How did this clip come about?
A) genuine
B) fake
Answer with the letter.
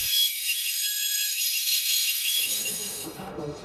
B